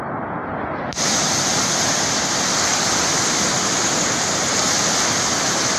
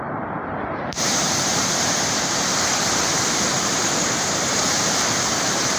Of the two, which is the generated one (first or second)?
second